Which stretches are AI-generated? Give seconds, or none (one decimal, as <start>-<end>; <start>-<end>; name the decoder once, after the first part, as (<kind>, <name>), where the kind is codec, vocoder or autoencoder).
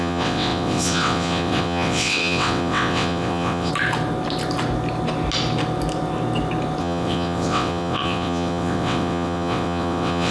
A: 0.0-3.7 (vocoder, WaveNeXt); 6.8-10.3